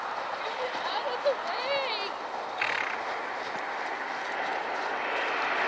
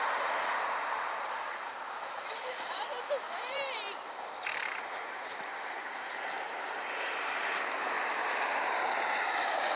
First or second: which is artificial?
second